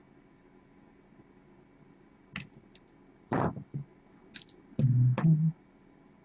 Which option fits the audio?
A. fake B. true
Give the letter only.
B